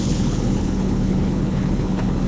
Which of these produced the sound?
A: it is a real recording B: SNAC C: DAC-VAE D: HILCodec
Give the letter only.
D